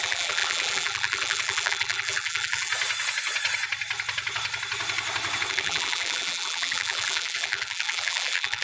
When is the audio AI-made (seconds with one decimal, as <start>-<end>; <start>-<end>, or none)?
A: 0.0-2.7; 5.5-8.6